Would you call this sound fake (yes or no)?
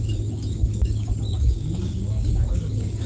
yes